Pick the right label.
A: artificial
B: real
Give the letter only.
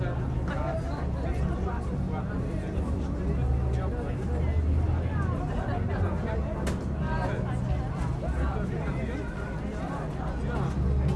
B